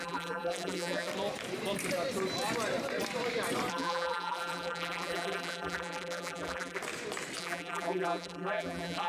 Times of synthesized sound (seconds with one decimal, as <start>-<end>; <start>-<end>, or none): 0.0-1.1; 3.7-6.8; 7.4-9.1